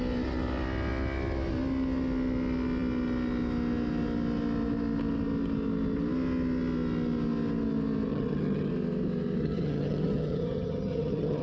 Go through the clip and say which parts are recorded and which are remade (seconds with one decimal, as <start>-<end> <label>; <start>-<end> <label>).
0.0-8.1 recorded; 8.1-8.7 remade; 8.7-9.4 recorded; 9.4-11.4 remade